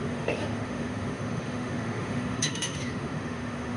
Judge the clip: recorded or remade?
remade